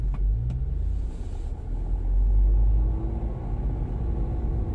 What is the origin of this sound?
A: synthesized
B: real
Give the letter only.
B